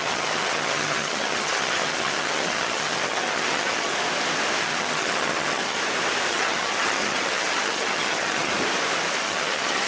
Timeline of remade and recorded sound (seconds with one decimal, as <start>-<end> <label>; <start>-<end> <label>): 0.0-3.9 remade; 3.9-4.6 recorded; 4.6-5.8 remade; 5.8-6.3 recorded; 6.3-8.5 remade; 8.5-9.2 recorded; 9.2-9.9 remade